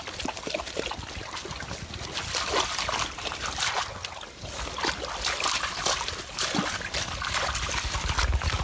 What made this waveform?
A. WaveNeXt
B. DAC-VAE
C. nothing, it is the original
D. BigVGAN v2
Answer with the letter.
C